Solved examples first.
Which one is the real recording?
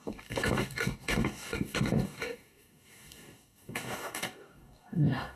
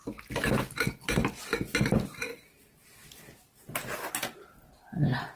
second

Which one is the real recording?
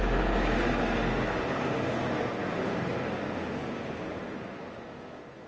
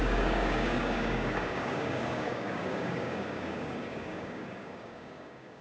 first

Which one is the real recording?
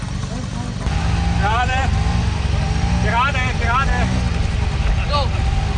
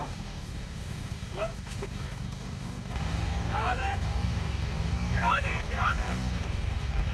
first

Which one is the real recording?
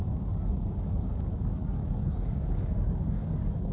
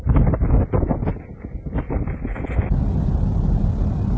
second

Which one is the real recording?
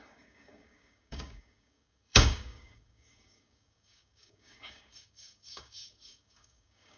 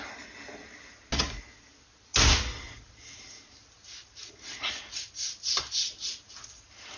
second